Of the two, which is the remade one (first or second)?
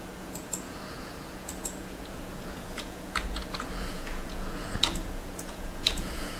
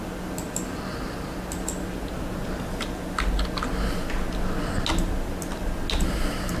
first